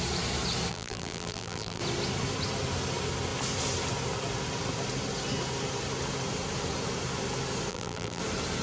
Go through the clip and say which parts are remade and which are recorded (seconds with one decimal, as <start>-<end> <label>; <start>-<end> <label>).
0.0-0.7 recorded; 0.7-1.8 remade; 1.8-7.7 recorded; 7.7-8.2 remade; 8.2-8.6 recorded